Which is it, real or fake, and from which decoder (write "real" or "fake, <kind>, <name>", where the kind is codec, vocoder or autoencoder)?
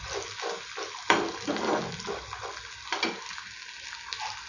real